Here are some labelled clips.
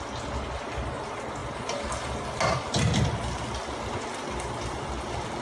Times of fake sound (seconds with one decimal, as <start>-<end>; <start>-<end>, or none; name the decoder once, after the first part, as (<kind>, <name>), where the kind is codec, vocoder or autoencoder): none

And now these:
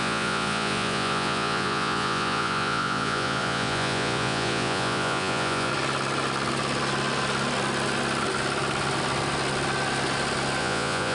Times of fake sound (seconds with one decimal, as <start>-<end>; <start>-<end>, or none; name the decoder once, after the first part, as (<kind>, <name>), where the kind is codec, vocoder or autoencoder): 0.0-5.7 (vocoder, Vocos); 10.6-11.1

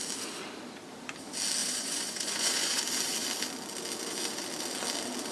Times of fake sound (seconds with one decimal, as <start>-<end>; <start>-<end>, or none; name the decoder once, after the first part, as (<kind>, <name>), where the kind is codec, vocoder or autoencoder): 1.6-2.8 (vocoder, Vocos)

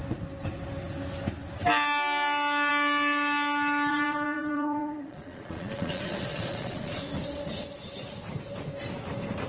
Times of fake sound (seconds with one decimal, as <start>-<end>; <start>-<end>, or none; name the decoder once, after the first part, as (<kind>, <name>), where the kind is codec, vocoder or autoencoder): 3.9-7.0 (vocoder, Vocos)

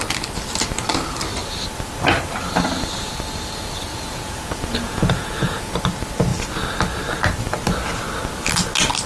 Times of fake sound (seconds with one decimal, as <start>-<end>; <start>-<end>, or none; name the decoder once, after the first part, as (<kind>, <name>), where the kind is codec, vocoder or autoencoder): 3.9-5.7 (vocoder, Vocos)

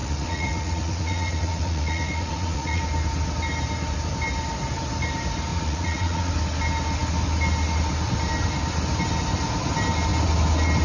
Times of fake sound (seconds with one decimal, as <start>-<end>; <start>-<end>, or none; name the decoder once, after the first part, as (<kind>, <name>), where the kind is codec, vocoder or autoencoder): 0.0-2.8 (vocoder, Vocos); 5.5-6.3